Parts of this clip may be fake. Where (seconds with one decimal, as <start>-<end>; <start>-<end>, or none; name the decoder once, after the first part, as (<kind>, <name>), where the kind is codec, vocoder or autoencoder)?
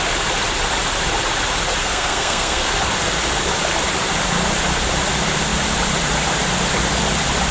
1.8-2.7 (codec, SNAC)